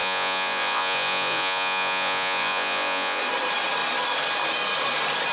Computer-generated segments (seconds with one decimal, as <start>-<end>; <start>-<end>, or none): 0.0-3.2

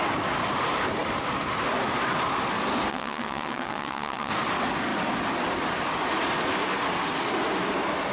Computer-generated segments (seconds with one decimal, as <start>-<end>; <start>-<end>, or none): 2.9-4.3

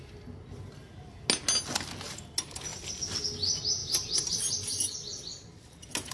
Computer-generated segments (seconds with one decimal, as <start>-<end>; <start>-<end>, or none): 2.7-3.2

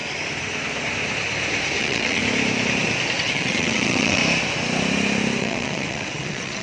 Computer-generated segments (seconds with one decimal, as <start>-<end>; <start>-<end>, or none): 1.8-2.2; 3.2-4.2; 5.4-6.6

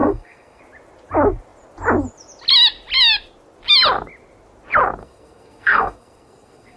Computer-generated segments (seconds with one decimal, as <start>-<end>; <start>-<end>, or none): 0.0-0.6; 5.0-6.8